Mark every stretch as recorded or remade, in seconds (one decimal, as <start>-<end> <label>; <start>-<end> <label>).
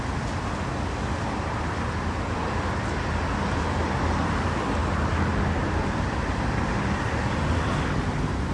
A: 0.0-8.5 recorded